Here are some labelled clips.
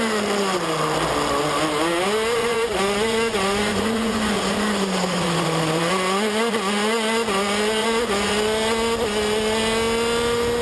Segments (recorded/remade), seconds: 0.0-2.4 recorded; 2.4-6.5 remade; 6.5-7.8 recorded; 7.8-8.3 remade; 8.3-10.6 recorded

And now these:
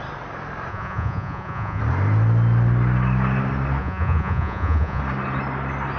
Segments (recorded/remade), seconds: 0.0-0.7 recorded; 0.7-1.8 remade; 1.8-3.8 recorded; 3.8-5.0 remade; 5.0-6.0 recorded

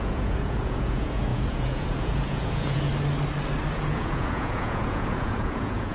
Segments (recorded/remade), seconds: 0.0-2.9 remade; 2.9-3.7 recorded; 3.7-5.9 remade

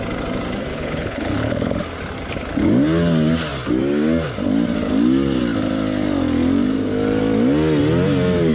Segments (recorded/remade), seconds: 0.0-0.7 recorded; 0.7-1.8 remade; 1.8-8.5 recorded

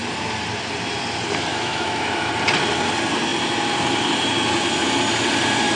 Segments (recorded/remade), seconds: 0.0-1.5 recorded; 1.5-2.3 remade; 2.3-5.8 recorded

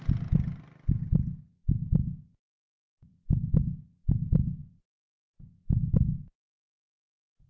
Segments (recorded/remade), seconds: 0.0-4.6 recorded; 4.6-7.5 remade